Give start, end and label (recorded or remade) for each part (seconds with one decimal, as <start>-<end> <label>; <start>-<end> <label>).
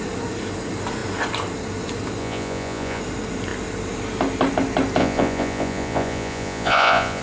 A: 0.0-2.2 recorded; 2.2-3.0 remade; 3.0-5.0 recorded; 5.0-7.2 remade